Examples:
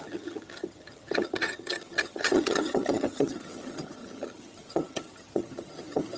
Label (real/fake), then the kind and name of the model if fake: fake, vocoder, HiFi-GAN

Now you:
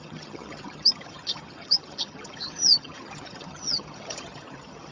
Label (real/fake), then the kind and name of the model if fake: fake, vocoder, HiFi-GAN